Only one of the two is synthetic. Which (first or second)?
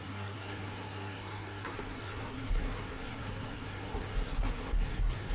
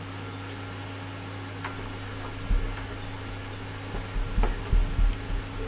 first